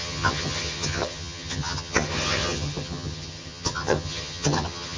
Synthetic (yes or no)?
yes